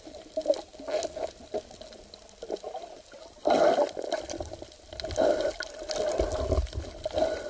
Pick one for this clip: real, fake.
real